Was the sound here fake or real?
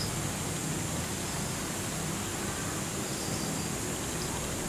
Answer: real